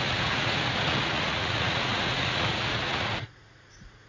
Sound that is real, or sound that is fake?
fake